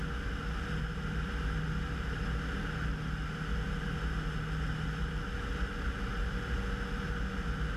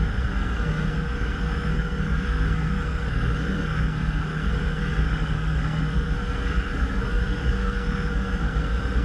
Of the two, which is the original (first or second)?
first